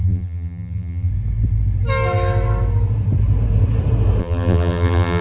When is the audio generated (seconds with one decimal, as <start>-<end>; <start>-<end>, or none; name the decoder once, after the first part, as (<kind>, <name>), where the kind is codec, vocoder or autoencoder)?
0.0-1.1 (vocoder, BigVGAN v2); 4.2-5.2